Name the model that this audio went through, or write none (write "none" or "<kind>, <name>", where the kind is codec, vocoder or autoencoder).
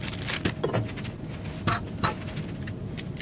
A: none